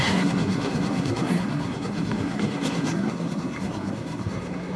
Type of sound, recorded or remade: remade